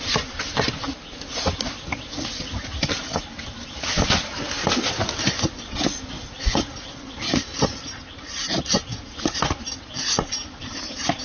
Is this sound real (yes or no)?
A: yes